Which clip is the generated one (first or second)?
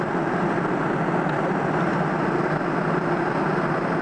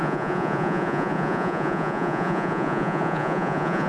second